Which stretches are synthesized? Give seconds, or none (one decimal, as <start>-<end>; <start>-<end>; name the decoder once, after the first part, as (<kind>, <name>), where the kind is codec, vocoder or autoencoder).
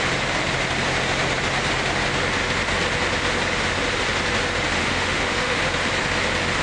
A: 4.8-5.6 (autoencoder, DAC-VAE)